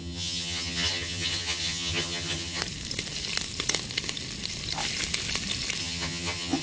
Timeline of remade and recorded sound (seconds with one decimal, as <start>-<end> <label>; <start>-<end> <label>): 0.0-2.6 remade; 2.6-5.8 recorded; 5.8-6.6 remade